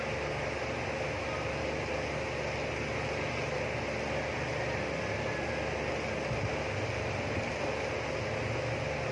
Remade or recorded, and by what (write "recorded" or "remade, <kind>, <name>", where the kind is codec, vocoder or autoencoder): recorded